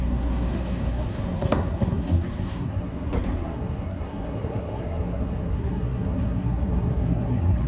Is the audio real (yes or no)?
no